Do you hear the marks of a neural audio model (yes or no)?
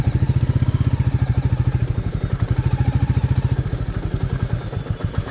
no